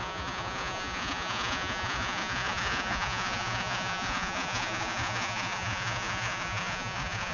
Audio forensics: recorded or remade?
remade